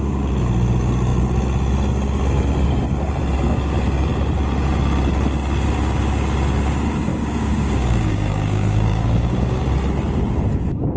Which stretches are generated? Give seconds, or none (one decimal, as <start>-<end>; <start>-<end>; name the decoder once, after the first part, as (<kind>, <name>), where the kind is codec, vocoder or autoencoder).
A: 7.1-9.6 (codec, DAC)